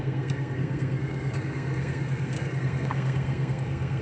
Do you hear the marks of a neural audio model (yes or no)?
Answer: yes